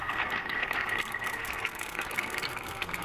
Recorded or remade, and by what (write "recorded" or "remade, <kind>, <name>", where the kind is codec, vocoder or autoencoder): remade, codec, SNAC